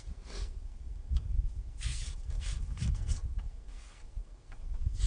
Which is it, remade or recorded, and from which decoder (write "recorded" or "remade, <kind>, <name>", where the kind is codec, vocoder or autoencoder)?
remade, codec, SNAC